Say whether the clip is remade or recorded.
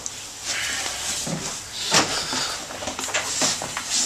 recorded